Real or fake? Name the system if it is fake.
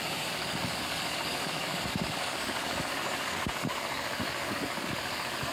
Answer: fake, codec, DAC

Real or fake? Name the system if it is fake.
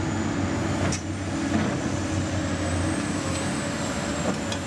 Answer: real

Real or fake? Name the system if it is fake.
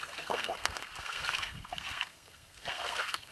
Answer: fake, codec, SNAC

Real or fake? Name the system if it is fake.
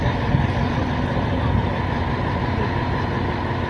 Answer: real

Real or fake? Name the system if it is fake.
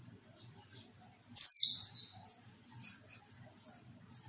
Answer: real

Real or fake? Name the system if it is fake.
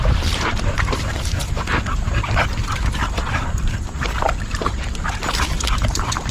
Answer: fake, vocoder, BigVGAN v2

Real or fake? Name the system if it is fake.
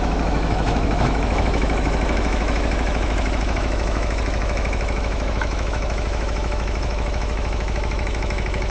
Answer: fake, autoencoder, DAC-VAE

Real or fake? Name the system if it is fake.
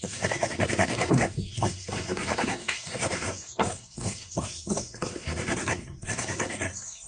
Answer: fake, codec, SNAC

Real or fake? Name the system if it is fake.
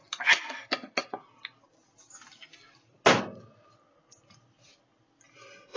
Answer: real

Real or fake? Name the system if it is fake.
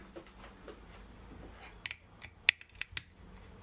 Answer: real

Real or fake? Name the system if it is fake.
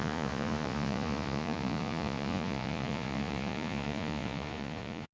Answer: fake, vocoder, Vocos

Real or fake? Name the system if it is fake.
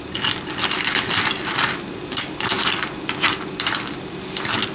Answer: fake, vocoder, BigVGAN v2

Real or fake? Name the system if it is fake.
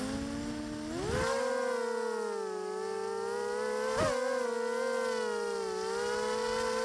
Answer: real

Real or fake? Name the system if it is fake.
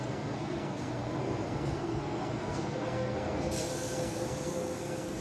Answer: fake, codec, SNAC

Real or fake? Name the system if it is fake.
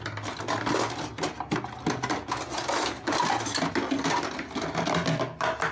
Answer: real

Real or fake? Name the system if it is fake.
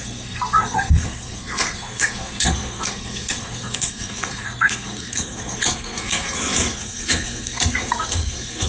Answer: fake, codec, SNAC